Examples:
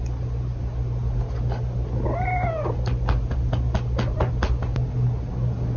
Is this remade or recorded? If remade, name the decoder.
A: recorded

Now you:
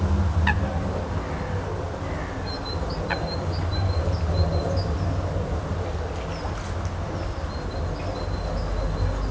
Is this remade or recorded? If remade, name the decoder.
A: recorded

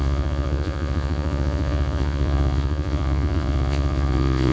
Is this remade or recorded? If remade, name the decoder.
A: remade, vocoder, Vocos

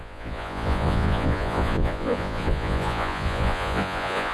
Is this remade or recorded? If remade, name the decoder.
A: remade, vocoder, Vocos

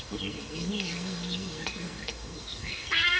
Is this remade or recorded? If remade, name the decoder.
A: remade, codec, SNAC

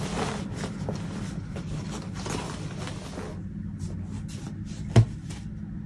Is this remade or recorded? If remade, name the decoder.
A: recorded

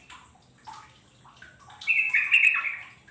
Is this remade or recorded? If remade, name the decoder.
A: recorded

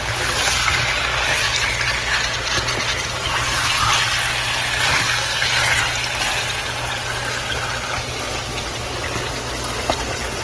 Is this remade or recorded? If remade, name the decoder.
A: recorded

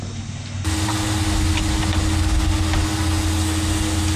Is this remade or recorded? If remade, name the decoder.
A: recorded